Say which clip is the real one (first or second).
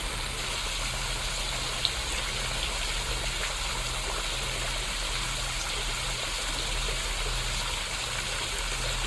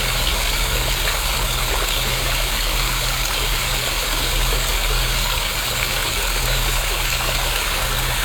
first